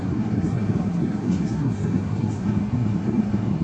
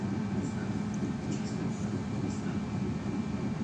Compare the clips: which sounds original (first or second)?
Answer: second